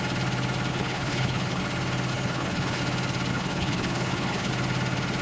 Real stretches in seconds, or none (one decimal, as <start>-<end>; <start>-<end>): 0.0-0.7; 1.6-2.1; 2.8-3.3; 4.5-5.2